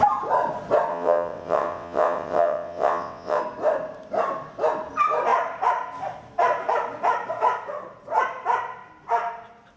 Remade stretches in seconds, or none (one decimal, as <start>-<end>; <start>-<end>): 0.9-3.4